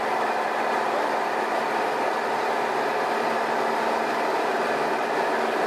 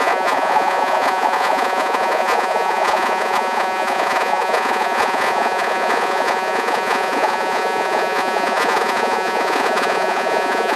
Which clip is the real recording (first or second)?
first